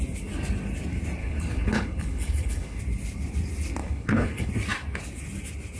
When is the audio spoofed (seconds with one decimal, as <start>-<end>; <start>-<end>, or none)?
1.2-2.8; 3.8-4.5